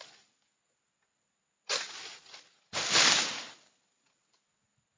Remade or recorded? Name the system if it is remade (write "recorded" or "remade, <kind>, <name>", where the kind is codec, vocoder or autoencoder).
recorded